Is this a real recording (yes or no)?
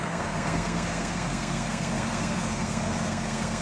no